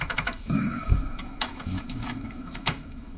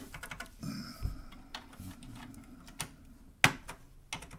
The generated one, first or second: first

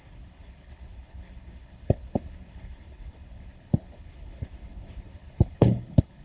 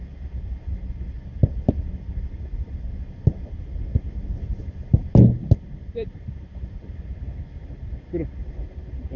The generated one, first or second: first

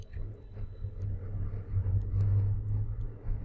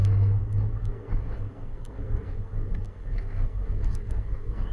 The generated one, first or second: second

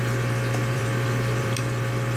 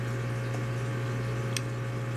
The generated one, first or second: first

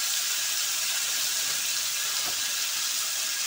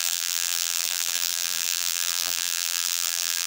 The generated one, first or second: second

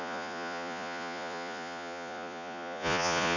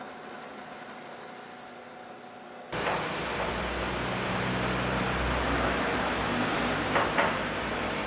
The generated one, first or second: first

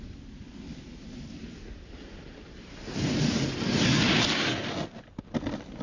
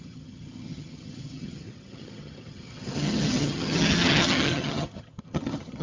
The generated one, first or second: second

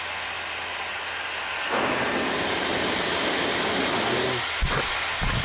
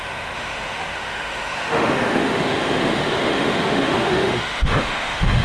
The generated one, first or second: second